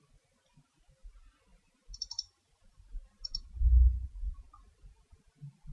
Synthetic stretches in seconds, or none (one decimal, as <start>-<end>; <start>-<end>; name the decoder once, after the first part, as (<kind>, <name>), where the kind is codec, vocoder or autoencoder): none